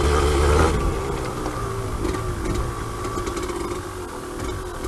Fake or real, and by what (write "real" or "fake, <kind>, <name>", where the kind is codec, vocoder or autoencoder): real